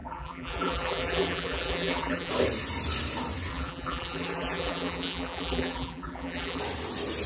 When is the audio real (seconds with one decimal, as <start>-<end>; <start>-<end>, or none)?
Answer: 2.3-3.5; 6.6-7.3